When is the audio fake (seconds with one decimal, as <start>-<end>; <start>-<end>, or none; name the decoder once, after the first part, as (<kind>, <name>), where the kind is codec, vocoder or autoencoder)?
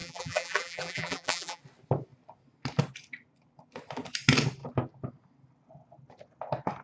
0.0-1.6 (vocoder, BigVGAN v2)